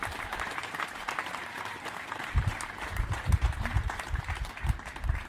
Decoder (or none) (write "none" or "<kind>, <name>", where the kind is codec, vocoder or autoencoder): vocoder, BigVGAN v2